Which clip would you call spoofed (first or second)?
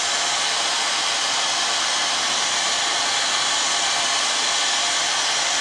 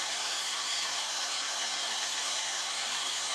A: second